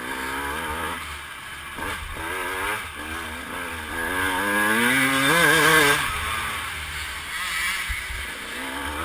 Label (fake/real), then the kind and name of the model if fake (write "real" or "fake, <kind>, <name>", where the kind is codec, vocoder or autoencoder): real